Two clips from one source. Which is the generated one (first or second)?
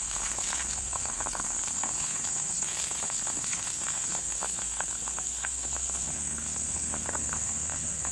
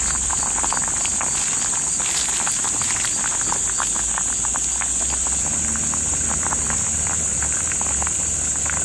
first